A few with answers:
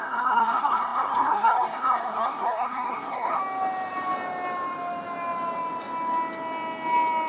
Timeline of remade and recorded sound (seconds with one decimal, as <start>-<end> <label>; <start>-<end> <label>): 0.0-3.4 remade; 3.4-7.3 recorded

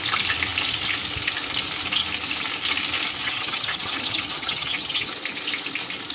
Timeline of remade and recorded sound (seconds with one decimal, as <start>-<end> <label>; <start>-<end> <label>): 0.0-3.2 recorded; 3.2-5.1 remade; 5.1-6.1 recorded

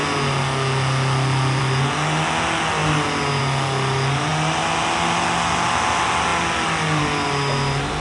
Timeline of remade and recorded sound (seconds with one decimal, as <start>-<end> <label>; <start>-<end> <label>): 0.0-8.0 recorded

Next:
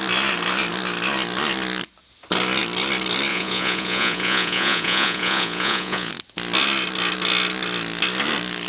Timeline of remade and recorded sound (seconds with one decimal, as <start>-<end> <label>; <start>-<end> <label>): 0.0-3.3 recorded; 3.3-6.1 remade; 6.1-8.7 recorded

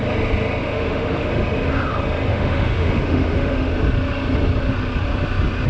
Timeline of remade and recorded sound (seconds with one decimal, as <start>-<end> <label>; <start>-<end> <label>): 0.0-0.6 recorded; 0.6-1.3 remade; 1.3-2.3 recorded; 2.3-3.7 remade; 3.7-5.7 recorded

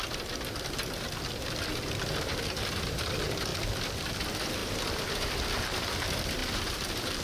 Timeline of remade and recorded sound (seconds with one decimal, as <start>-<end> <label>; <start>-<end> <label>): 0.0-3.5 remade; 3.5-4.1 recorded; 4.1-4.6 remade; 4.6-5.8 recorded; 5.8-7.2 remade

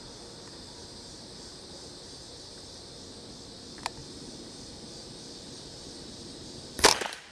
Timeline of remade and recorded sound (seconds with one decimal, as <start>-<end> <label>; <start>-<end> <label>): 0.0-0.8 recorded; 0.8-2.9 remade; 2.9-4.0 recorded; 4.0-7.3 remade

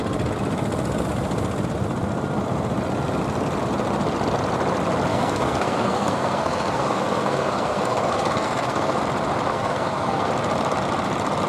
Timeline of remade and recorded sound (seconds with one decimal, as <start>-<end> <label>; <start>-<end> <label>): 0.0-5.1 recorded; 5.1-9.0 remade; 9.0-9.5 recorded; 9.5-10.3 remade; 10.3-11.5 recorded